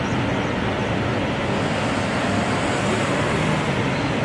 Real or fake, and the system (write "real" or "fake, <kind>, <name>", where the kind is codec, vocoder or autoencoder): real